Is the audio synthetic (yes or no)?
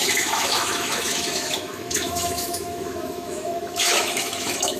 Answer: yes